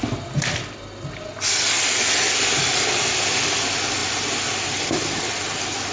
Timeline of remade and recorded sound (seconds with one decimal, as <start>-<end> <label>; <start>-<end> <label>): 0.0-5.9 recorded